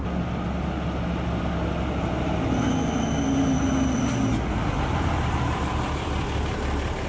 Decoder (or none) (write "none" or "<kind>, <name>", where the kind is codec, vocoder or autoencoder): none